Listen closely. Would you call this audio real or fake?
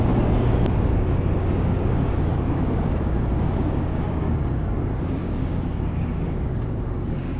fake